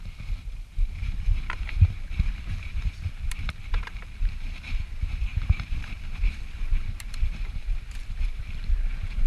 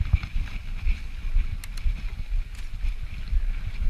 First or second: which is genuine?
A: second